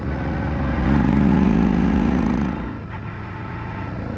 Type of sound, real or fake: fake